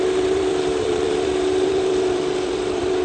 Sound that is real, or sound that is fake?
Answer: fake